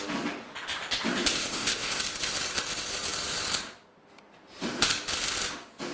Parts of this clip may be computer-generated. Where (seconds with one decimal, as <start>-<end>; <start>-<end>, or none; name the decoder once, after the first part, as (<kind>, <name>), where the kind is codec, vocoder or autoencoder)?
1.3-2.0 (codec, ZipCodec)